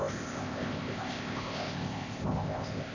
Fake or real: fake